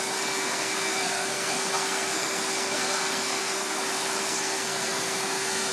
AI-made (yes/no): yes